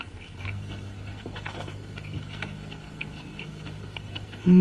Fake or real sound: fake